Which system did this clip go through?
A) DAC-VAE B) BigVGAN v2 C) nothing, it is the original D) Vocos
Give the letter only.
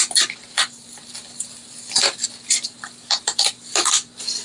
C